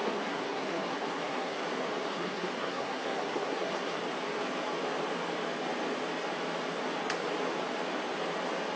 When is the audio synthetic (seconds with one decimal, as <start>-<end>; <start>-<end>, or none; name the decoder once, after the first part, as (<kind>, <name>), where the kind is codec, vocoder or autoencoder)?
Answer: 0.0-1.6 (codec, SNAC); 2.1-4.0